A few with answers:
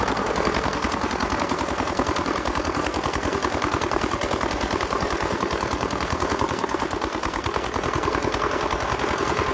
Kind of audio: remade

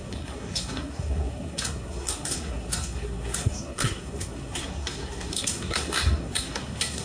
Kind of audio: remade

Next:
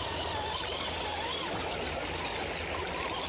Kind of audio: recorded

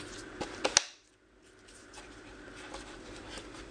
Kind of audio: recorded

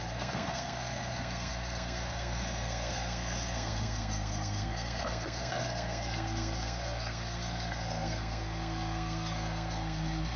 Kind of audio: remade